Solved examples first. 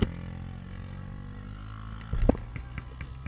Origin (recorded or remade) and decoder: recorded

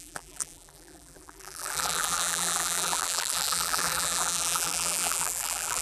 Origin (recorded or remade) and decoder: remade, vocoder, BigVGAN v2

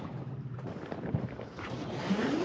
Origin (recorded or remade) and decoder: remade, vocoder, BigVGAN v2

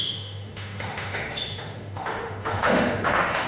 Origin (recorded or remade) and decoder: remade, autoencoder, DAC-VAE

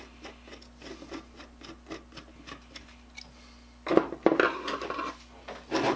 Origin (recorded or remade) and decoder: recorded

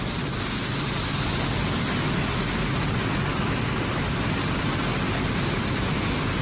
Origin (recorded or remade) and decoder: recorded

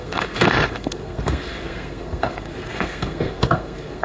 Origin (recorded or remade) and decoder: remade, codec, SNAC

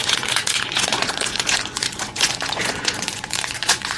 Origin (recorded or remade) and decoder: remade, vocoder, Vocos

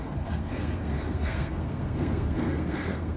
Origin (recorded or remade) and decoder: remade, codec, SNAC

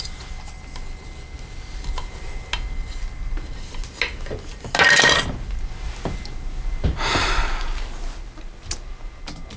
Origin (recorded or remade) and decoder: recorded